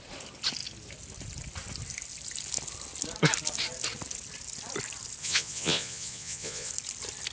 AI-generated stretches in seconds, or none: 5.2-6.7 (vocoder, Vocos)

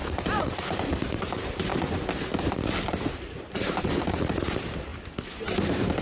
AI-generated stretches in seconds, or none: 0.0-1.7 (vocoder, BigVGAN v2); 3.3-4.9; 5.5-6.0

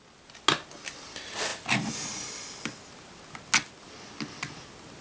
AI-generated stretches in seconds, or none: none